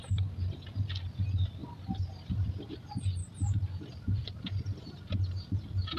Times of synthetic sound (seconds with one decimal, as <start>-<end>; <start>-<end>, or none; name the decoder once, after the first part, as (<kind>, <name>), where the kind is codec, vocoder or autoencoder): 3.2-4.4 (vocoder, BigVGAN v2)